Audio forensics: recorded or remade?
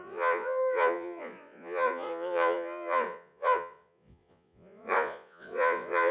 remade